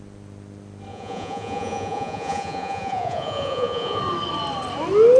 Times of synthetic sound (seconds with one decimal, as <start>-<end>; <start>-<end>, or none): 0.9-4.0